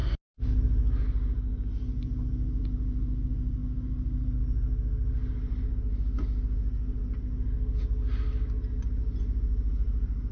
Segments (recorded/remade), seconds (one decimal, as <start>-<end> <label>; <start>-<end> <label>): 0.0-10.3 recorded